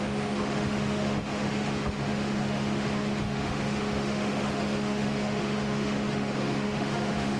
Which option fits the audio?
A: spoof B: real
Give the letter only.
A